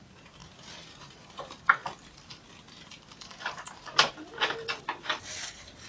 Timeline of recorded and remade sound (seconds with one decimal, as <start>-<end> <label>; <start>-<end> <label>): 0.0-5.9 recorded